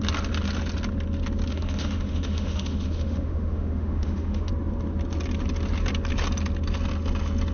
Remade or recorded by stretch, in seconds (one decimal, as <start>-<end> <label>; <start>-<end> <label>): 0.0-1.5 recorded; 1.5-4.5 remade; 4.5-7.5 recorded